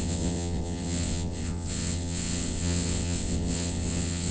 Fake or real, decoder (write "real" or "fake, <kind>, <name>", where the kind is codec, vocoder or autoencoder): fake, vocoder, WaveNeXt